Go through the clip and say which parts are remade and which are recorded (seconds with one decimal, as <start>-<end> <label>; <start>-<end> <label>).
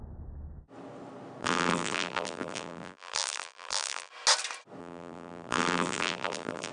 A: 0.0-1.4 recorded; 1.4-4.1 remade; 4.1-4.8 recorded; 4.8-6.7 remade